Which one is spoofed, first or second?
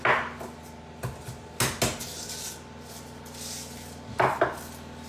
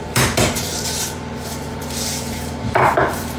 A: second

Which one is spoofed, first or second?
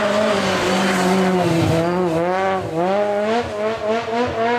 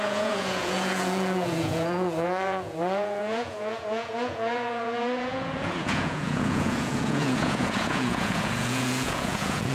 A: second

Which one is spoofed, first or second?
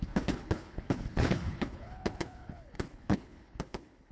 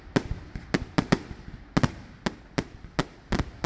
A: first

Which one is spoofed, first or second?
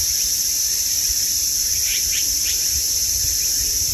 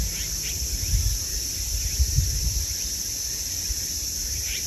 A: first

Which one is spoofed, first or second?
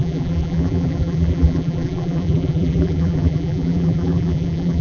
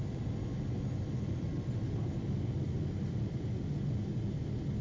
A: first